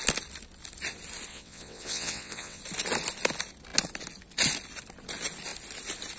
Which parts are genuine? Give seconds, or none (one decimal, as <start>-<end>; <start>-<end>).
0.0-1.3; 2.6-6.2